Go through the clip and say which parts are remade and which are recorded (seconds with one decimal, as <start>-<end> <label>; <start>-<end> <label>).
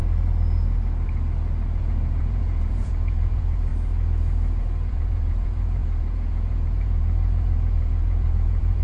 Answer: 0.0-1.8 recorded; 1.8-3.7 remade; 3.7-4.9 recorded; 4.9-8.8 remade